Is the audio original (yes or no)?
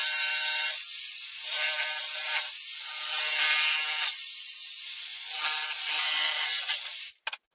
yes